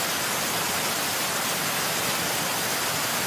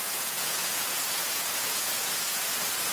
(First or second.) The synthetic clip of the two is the second